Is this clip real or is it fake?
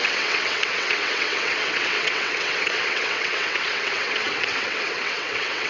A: fake